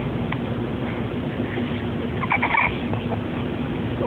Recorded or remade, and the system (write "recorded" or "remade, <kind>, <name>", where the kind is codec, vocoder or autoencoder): recorded